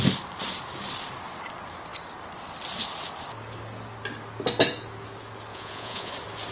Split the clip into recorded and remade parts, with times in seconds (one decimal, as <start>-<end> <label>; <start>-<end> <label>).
0.0-5.5 recorded; 5.5-6.1 remade; 6.1-6.5 recorded